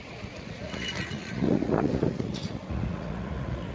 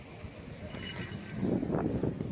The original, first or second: second